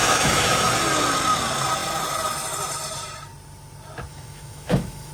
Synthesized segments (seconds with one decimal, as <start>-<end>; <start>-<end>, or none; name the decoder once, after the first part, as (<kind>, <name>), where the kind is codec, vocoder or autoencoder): 0.0-0.7 (autoencoder, DAC-VAE); 4.1-5.1